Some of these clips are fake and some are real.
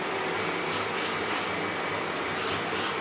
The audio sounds fake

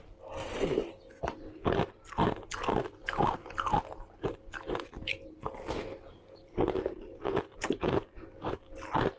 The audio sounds real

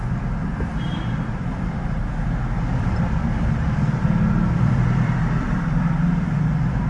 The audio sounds fake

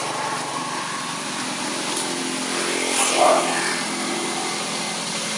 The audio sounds real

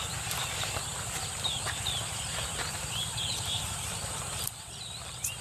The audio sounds fake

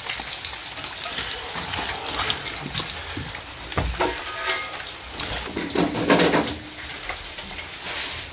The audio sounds real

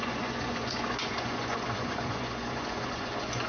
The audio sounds fake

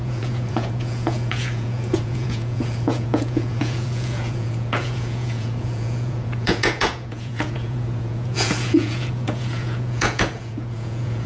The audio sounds fake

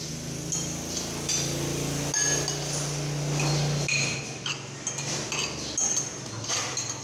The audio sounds real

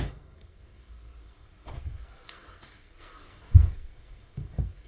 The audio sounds fake